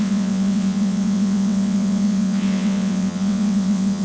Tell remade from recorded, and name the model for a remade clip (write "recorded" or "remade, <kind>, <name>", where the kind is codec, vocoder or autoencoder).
remade, vocoder, WaveNeXt